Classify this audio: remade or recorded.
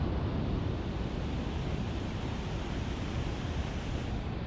recorded